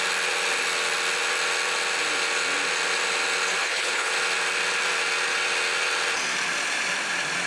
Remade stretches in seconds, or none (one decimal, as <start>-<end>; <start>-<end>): 3.6-4.1